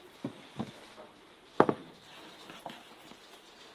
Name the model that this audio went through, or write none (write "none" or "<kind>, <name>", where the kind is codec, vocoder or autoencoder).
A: none